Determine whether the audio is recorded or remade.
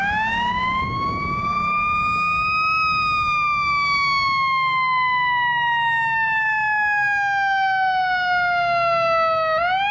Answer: recorded